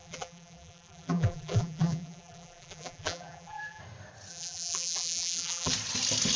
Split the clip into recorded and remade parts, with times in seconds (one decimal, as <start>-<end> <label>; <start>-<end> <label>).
0.0-3.8 remade; 3.8-4.3 recorded; 4.3-5.7 remade; 5.7-6.4 recorded